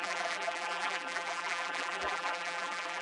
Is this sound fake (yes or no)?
yes